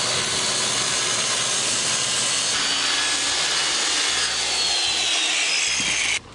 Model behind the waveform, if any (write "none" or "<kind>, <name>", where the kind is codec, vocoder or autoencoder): none